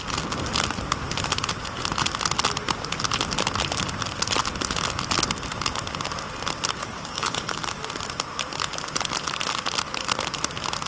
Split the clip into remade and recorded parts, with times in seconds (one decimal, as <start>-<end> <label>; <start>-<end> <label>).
0.0-6.8 recorded; 6.8-7.8 remade; 7.8-10.9 recorded